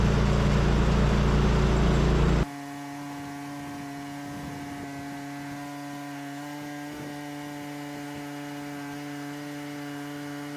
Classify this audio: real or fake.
real